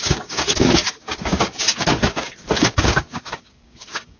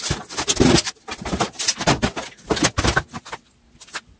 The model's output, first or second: first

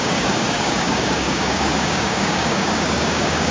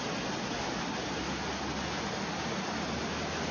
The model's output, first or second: first